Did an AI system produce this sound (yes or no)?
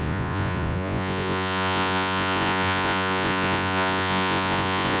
yes